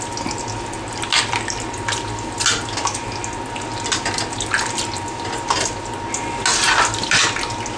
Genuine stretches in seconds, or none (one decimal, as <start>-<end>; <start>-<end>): 0.0-7.8